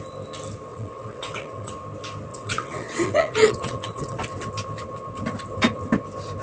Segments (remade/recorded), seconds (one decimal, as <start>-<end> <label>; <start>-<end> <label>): 0.0-0.7 recorded; 0.7-1.7 remade; 1.7-2.3 recorded; 2.3-4.2 remade; 4.2-6.4 recorded